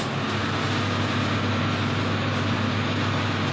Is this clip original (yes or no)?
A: yes